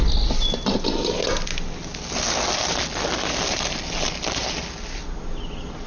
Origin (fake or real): real